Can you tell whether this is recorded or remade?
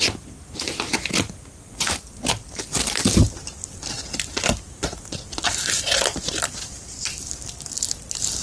recorded